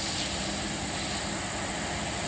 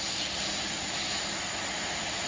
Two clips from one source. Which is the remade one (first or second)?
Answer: second